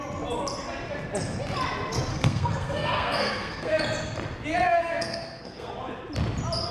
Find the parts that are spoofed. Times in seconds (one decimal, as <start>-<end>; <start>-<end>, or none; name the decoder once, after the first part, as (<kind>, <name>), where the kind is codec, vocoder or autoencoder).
2.1-3.8 (codec, SNAC); 4.8-5.7